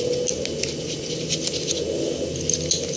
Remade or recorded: recorded